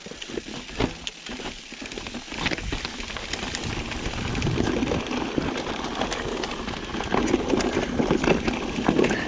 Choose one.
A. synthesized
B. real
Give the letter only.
B